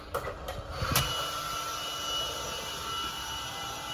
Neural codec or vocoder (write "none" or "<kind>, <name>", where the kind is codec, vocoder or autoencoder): none